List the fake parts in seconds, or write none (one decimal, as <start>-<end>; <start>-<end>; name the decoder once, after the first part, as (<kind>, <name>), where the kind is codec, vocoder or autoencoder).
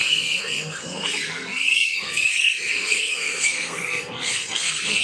0.0-5.0 (codec, SNAC)